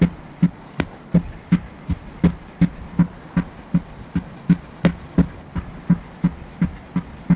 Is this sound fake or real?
real